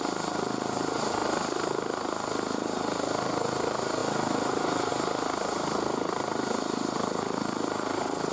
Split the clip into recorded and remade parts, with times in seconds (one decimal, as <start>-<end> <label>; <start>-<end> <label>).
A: 0.0-8.3 recorded